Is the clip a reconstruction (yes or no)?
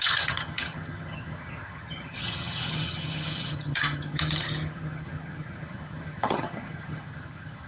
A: yes